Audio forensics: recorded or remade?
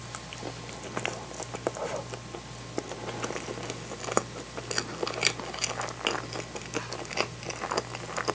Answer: recorded